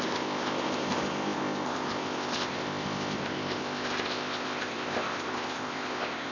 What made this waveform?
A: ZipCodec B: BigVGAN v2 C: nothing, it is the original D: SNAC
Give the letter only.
A